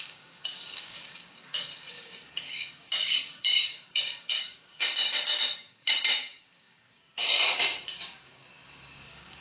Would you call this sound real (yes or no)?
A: no